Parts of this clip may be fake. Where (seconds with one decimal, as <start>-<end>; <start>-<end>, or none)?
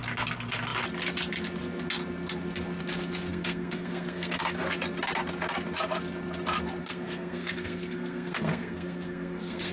3.3-4.4; 6.8-9.7